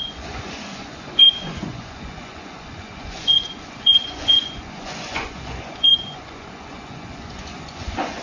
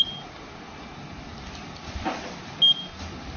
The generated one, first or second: first